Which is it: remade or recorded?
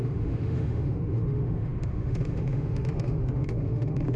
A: remade